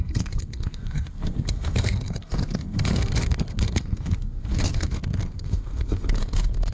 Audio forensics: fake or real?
fake